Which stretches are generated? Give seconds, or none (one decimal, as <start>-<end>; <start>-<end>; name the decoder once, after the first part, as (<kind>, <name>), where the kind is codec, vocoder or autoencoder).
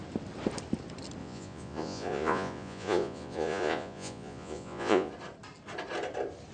1.2-5.1 (vocoder, Vocos)